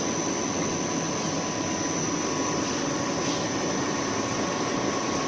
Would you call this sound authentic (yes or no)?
yes